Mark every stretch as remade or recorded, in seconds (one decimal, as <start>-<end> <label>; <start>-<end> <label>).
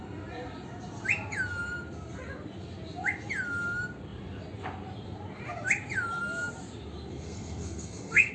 0.0-7.1 recorded; 7.1-8.3 remade